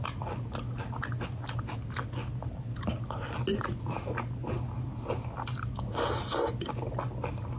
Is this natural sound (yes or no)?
yes